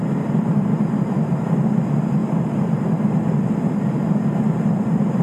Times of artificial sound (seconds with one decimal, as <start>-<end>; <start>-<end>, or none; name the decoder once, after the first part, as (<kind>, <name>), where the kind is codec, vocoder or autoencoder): none